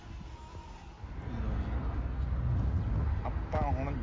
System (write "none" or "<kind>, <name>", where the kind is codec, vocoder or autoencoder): none